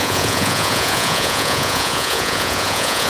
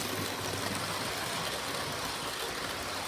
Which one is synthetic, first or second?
first